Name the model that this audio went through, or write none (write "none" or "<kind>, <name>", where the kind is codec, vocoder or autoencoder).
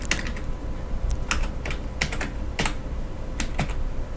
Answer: none